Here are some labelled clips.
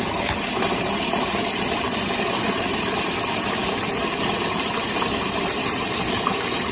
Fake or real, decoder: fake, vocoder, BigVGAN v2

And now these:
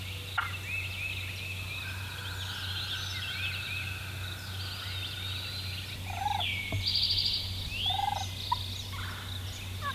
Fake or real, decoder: real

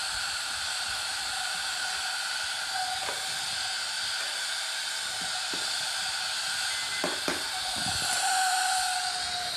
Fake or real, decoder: real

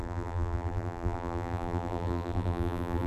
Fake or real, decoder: fake, vocoder, BigVGAN v2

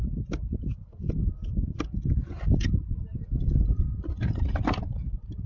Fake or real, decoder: real